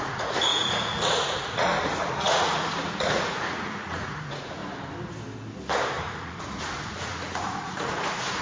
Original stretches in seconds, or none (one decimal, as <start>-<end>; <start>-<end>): 4.6-6.0